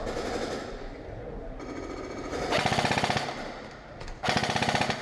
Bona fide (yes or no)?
yes